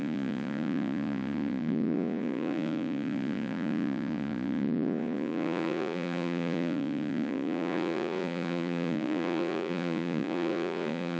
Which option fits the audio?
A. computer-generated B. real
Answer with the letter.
A